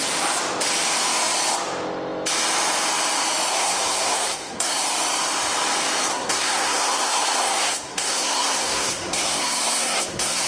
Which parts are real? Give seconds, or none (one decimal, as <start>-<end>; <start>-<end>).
0.0-3.5; 4.8-6.1